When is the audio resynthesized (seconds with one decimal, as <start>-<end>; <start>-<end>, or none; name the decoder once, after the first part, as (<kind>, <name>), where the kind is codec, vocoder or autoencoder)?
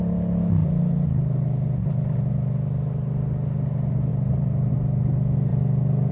4.1-4.7 (vocoder, BigVGAN v2)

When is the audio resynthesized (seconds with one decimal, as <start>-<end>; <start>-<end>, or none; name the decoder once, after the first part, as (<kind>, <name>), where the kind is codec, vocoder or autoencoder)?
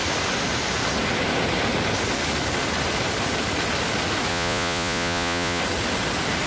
4.3-5.6 (vocoder, Vocos)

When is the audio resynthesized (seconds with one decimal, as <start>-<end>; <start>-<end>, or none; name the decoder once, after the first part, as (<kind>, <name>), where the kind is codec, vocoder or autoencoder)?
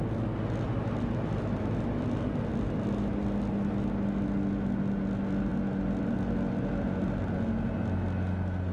none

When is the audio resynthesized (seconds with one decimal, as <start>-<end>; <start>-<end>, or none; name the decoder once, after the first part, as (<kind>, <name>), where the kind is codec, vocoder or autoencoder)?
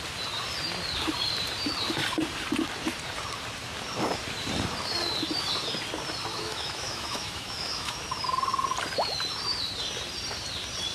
6.3-8.0 (autoencoder, DAC-VAE)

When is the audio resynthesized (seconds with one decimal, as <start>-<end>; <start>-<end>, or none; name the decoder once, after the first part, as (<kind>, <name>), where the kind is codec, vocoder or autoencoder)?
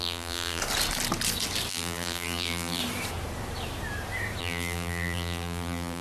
0.0-0.6 (vocoder, BigVGAN v2); 1.7-2.8; 4.4-6.0